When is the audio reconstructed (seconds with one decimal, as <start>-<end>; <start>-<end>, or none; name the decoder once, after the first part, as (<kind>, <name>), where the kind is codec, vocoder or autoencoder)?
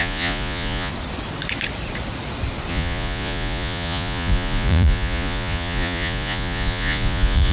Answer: 0.0-0.9 (vocoder, Vocos); 2.7-7.5